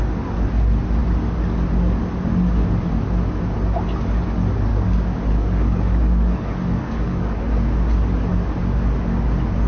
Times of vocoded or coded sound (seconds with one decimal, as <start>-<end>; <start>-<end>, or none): 4.7-7.4